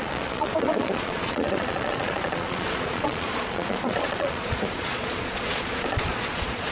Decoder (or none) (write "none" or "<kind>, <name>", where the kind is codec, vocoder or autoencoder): vocoder, Vocos